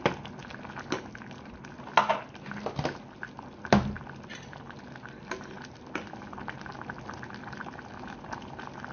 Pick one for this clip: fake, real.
real